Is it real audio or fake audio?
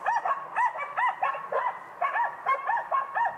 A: real